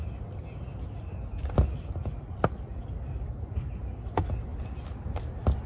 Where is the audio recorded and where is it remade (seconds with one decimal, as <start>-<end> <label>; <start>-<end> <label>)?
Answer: 0.0-5.7 recorded